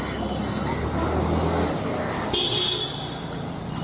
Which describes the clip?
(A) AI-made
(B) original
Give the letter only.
B